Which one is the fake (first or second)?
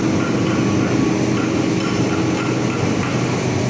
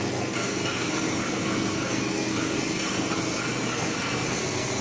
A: second